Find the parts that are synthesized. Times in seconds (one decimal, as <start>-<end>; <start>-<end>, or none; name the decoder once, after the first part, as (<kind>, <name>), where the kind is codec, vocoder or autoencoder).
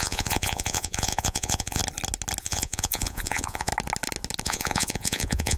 0.0-1.8 (vocoder, Vocos); 2.4-3.7; 4.4-5.6